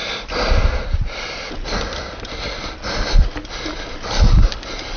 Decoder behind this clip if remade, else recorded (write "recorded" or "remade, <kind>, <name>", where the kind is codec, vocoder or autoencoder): recorded